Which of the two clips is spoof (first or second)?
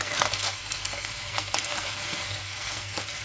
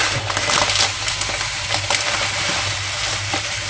first